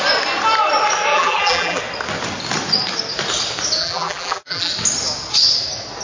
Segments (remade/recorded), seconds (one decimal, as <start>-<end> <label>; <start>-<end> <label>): 0.0-1.1 recorded; 1.1-1.8 remade; 1.8-3.8 recorded; 3.8-4.7 remade; 4.7-6.0 recorded